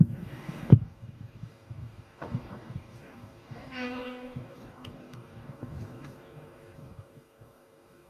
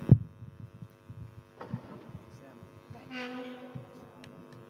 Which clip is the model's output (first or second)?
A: first